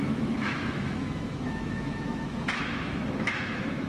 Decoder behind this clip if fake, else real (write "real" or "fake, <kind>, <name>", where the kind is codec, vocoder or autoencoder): fake, autoencoder, DAC-VAE